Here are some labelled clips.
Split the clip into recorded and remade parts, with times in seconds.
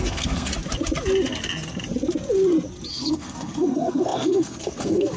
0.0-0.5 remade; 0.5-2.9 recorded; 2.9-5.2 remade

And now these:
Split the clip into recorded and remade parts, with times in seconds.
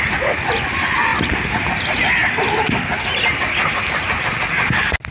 0.0-5.1 recorded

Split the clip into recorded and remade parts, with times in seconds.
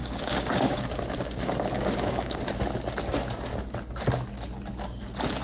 0.0-2.4 remade; 2.4-5.4 recorded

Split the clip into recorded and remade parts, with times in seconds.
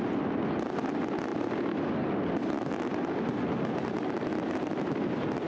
0.0-5.5 recorded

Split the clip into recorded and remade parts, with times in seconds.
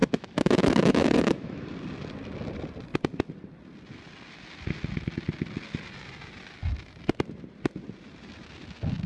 0.0-1.7 remade; 1.7-9.1 recorded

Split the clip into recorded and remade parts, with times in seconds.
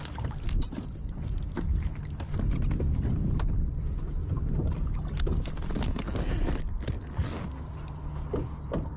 0.0-9.0 recorded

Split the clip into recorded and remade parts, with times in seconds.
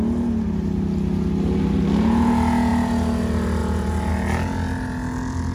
0.0-5.5 recorded